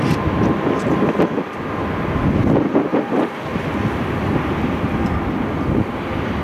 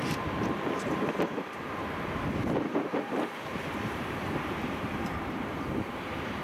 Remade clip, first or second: second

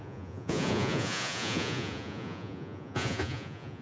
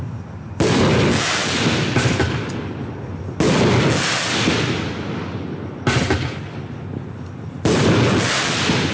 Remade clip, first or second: first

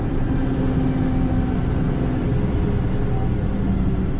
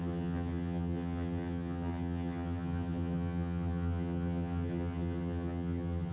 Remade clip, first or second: second